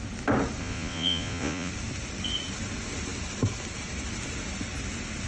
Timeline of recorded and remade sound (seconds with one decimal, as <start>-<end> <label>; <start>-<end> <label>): 0.0-0.6 recorded; 0.6-1.7 remade; 1.7-5.3 recorded